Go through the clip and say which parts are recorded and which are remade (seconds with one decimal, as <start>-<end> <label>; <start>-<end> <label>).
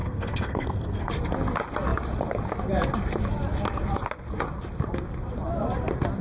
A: 0.0-1.1 remade; 1.1-6.2 recorded